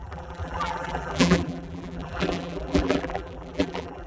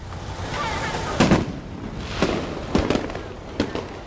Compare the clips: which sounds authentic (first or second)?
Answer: second